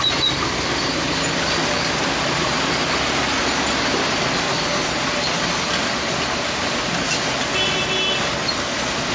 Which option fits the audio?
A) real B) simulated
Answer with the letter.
A